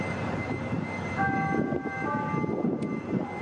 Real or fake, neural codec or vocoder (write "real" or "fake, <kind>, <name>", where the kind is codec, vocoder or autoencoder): real